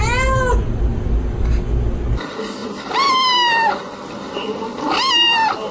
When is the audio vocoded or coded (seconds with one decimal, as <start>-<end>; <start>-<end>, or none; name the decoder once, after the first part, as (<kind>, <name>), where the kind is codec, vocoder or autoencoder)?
none